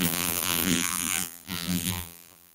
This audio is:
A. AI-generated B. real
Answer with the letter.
A